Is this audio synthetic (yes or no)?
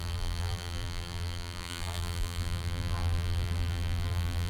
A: yes